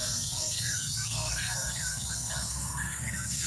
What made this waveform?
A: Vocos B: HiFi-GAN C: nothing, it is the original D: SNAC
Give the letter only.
D